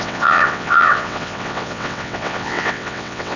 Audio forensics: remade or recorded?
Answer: remade